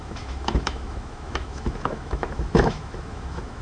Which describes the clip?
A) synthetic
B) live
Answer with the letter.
A